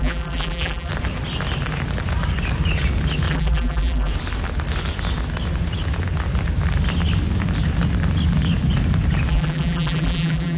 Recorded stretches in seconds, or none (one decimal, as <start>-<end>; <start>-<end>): 0.9-3.3; 4.1-9.3